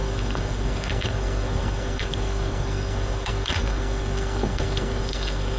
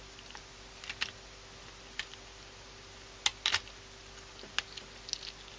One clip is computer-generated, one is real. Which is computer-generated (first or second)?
first